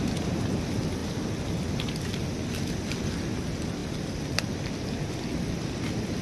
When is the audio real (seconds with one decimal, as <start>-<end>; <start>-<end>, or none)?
0.0-6.2